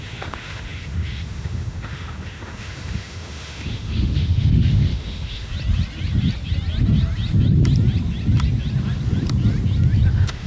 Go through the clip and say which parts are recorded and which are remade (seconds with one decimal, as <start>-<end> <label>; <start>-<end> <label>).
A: 0.0-5.5 remade; 5.5-10.1 recorded; 10.1-10.5 remade